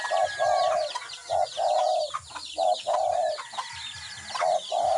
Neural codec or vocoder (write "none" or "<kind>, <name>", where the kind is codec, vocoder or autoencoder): none